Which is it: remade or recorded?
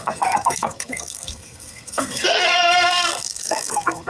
remade